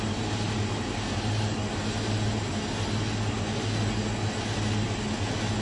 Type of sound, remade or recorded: recorded